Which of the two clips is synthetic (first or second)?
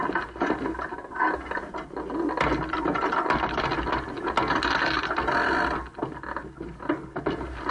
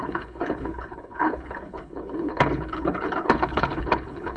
second